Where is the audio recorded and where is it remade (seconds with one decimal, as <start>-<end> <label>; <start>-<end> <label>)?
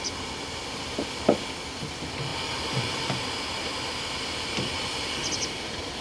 0.0-5.2 recorded; 5.2-6.0 remade